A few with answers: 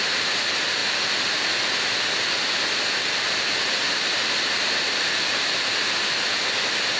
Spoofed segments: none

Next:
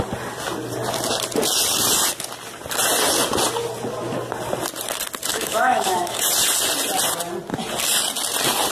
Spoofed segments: 5.3-6.2 (autoencoder, DAC-VAE)

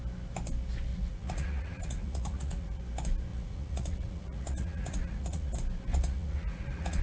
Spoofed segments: 0.9-2.8 (vocoder, Vocos); 3.3-5.5; 5.9-7.0